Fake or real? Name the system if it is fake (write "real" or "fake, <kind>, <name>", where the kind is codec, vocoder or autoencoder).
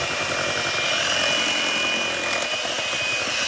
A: real